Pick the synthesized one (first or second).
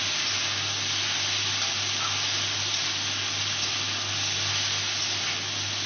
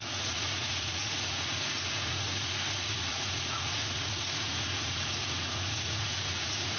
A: second